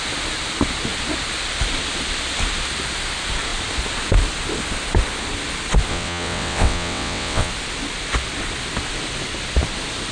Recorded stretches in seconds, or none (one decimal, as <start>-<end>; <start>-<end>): 0.0-5.9; 7.5-10.1